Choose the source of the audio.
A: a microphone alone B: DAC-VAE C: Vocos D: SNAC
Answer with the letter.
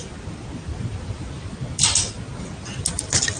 A